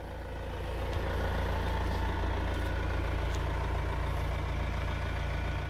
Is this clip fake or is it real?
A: real